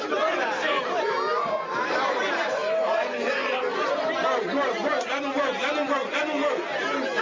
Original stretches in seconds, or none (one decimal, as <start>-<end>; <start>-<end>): 0.0-7.2